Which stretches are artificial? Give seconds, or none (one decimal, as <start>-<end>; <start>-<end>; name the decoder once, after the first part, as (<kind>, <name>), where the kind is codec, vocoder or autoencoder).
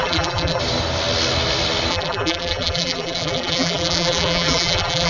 0.0-0.6 (vocoder, BigVGAN v2); 1.9-5.1